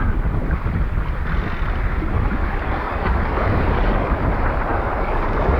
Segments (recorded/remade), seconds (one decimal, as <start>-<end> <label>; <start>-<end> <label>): 0.0-2.4 recorded; 2.4-4.1 remade; 4.1-4.7 recorded; 4.7-5.6 remade